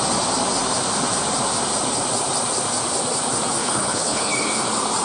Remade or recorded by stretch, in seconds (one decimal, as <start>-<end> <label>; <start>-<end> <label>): 0.0-3.6 recorded; 3.6-4.3 remade; 4.3-5.0 recorded